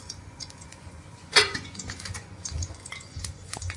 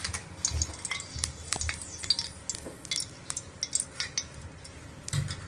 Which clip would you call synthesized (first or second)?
first